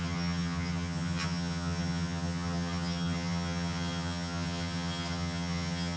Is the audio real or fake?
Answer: fake